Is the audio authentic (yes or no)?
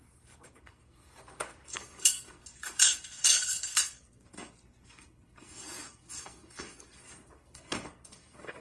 no